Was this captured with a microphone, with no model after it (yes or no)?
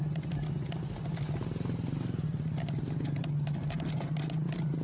yes